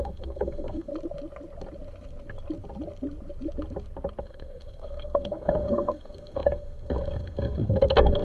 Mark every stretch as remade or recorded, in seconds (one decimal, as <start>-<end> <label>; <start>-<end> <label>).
0.0-0.9 remade; 0.9-4.2 recorded; 4.2-8.2 remade